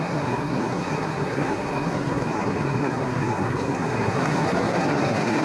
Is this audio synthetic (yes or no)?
yes